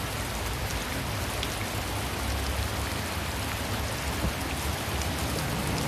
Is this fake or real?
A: real